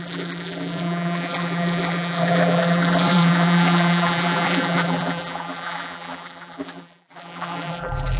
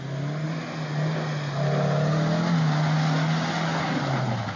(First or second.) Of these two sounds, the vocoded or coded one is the first